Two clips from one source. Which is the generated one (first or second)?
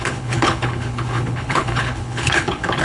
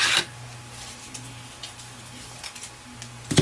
first